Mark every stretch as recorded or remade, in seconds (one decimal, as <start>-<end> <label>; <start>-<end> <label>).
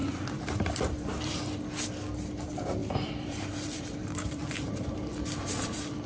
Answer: 0.0-1.4 remade; 1.4-2.8 recorded; 2.8-6.1 remade